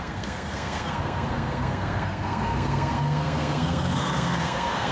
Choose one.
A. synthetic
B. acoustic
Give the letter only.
A